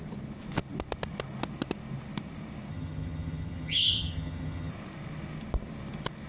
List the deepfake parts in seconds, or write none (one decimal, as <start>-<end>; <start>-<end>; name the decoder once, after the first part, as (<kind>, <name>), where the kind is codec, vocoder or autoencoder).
2.7-4.7 (vocoder, HiFi-GAN)